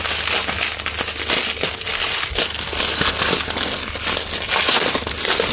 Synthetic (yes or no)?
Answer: no